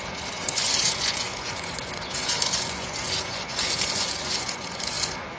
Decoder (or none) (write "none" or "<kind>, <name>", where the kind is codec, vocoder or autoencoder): vocoder, Vocos